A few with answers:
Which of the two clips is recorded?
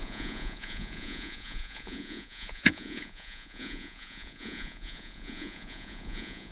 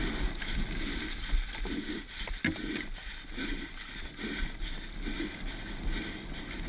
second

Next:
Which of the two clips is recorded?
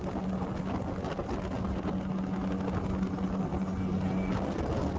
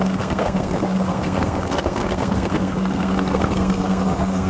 first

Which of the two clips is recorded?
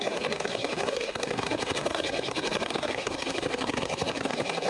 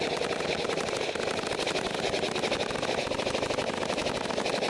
second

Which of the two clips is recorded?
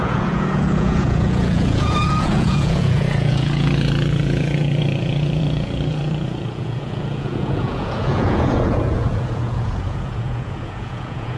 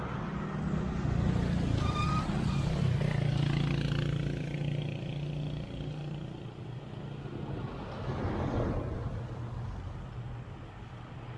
second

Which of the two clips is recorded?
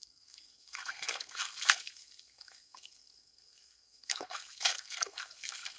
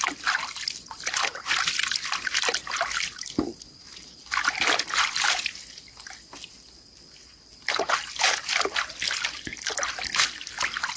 second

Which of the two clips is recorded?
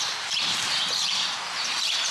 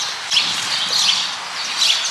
second